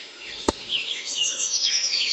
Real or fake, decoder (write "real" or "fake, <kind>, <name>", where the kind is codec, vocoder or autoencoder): fake, autoencoder, DAC-VAE